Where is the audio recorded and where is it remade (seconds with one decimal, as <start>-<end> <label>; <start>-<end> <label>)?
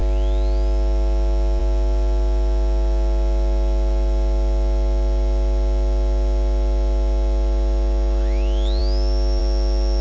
0.0-10.0 recorded